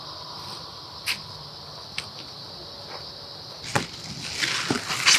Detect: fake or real real